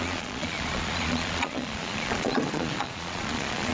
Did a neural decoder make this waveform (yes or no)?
yes